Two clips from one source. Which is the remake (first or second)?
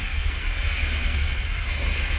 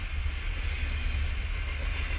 first